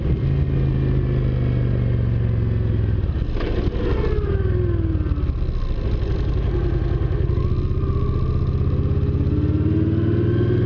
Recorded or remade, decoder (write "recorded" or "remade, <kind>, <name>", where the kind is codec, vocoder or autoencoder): recorded